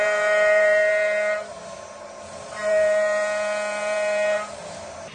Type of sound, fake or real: fake